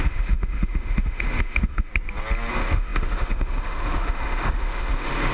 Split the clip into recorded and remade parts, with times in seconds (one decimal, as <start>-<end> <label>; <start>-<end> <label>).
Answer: 0.0-1.9 remade; 1.9-2.5 recorded; 2.5-5.3 remade

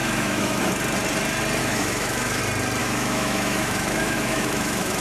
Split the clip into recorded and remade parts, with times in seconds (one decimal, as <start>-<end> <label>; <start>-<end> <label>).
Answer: 0.0-0.7 remade; 0.7-1.6 recorded; 1.6-2.4 remade; 2.4-2.8 recorded; 2.8-5.0 remade

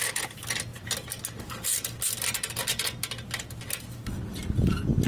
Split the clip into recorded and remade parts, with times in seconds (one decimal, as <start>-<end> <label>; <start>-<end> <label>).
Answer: 0.0-5.1 recorded